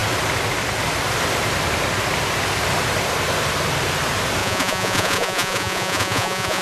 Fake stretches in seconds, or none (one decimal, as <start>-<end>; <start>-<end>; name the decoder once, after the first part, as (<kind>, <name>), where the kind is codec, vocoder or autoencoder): 4.4-6.6 (vocoder, Vocos)